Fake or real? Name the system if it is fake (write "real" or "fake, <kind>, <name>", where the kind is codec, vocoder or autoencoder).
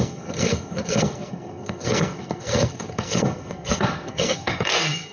fake, codec, SNAC